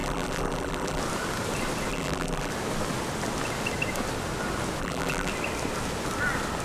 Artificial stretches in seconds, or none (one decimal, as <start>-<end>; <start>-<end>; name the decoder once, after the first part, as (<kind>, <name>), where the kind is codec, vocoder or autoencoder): 0.0-1.0 (vocoder, BigVGAN v2); 1.9-2.5; 4.8-5.3